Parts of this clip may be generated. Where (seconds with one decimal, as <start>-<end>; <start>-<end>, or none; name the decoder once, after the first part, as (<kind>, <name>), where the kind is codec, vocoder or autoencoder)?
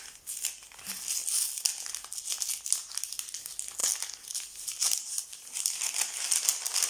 none